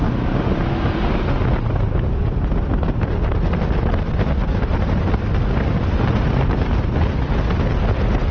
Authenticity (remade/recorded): recorded